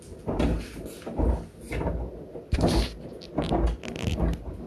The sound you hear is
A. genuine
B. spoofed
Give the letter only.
A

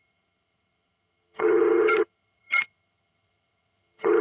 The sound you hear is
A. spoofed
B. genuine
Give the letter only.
A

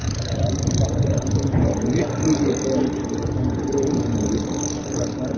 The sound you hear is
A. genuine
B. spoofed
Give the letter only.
A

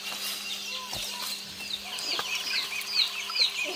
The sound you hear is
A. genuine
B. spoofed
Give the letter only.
A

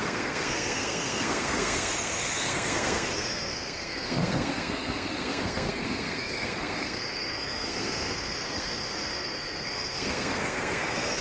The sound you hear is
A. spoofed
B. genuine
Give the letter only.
A